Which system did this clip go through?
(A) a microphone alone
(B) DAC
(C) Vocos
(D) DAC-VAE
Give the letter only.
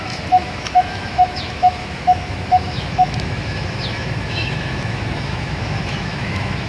D